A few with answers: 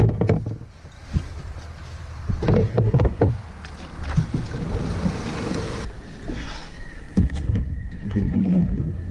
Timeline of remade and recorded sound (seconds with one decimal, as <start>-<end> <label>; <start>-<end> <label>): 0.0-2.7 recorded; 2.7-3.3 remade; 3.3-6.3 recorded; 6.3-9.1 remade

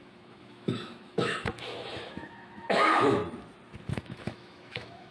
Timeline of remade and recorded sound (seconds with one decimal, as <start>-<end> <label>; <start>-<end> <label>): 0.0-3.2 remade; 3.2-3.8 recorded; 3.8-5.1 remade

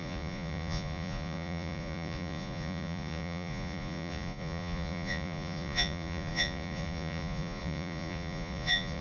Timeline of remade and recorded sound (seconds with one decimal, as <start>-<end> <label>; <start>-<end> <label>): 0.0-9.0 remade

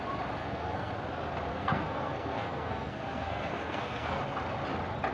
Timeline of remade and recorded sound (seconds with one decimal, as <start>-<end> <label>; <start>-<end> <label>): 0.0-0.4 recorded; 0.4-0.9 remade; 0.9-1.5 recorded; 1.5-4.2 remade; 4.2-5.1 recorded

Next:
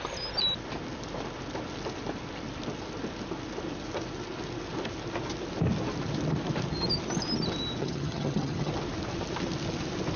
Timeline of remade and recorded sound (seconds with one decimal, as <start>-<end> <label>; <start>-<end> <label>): 0.0-7.8 recorded; 7.8-8.7 remade; 8.7-10.2 recorded

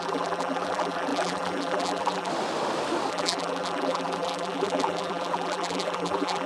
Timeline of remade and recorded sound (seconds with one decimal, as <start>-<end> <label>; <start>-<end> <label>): 0.0-2.3 remade; 2.3-3.1 recorded; 3.1-6.5 remade

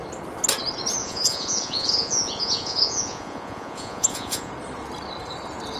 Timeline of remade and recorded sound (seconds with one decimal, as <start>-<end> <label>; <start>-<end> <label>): 0.0-1.0 recorded; 1.0-4.5 remade; 4.5-5.8 recorded

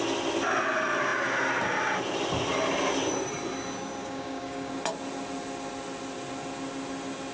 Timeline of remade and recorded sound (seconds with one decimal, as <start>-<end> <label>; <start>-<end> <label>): 0.0-4.0 recorded; 4.0-4.7 remade; 4.7-7.3 recorded